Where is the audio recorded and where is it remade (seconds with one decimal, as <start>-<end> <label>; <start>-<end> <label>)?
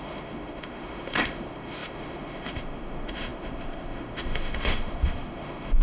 0.0-5.8 remade